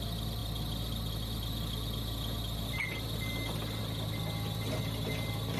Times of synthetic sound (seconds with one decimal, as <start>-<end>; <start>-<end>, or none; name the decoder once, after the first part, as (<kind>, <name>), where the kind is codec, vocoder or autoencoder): none